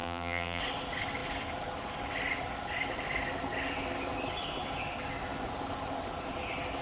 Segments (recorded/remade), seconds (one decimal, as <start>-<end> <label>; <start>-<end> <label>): 0.0-0.6 remade; 0.6-6.8 recorded